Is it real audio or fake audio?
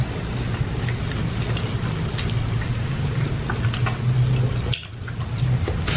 real